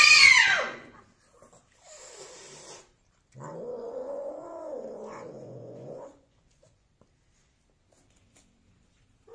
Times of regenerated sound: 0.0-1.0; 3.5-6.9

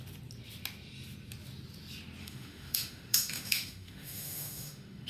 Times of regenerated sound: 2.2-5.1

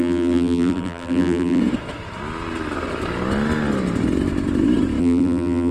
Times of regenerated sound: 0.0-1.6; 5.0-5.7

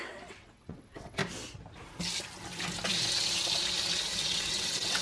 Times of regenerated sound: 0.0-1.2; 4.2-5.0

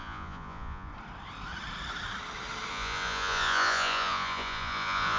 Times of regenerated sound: 0.0-0.9; 2.7-5.2

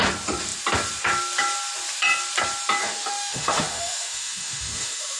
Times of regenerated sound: 2.8-5.2